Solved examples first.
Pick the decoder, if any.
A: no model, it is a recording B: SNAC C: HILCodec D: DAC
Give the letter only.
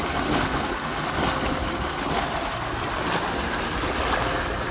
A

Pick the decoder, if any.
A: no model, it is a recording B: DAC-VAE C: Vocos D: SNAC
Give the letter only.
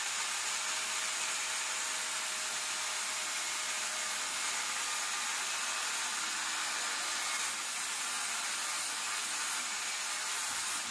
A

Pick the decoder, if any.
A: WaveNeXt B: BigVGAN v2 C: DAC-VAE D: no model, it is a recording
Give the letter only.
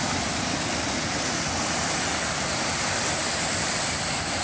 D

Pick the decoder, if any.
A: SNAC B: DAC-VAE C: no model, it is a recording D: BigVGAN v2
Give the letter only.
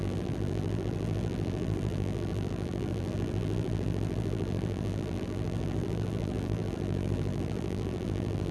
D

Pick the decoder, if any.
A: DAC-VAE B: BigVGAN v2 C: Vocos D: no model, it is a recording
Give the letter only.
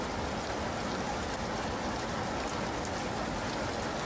D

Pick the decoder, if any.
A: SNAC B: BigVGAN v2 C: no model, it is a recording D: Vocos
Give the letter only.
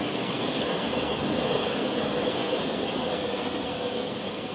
A